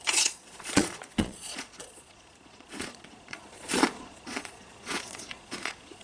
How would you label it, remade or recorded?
remade